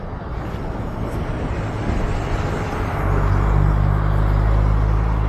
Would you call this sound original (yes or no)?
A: yes